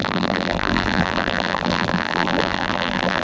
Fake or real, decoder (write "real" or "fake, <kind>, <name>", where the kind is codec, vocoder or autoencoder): fake, vocoder, BigVGAN v2